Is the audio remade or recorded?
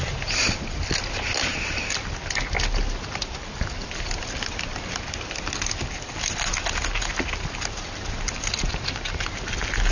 recorded